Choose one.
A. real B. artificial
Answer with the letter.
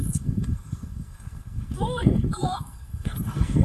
B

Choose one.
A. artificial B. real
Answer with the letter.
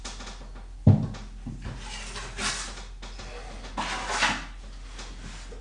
B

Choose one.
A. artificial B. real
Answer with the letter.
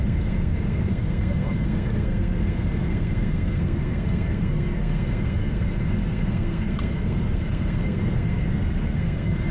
A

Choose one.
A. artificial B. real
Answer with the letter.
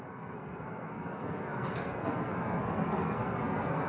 A